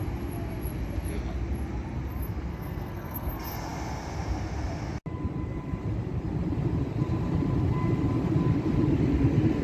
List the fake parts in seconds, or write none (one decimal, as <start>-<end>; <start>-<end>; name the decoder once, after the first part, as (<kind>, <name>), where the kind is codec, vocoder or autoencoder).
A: 2.5-3.3 (codec, SNAC)